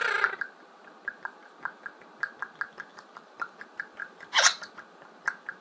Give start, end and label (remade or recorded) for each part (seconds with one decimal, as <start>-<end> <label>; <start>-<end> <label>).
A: 0.0-2.9 recorded; 2.9-3.6 remade; 3.6-4.0 recorded; 4.0-4.7 remade; 4.7-5.6 recorded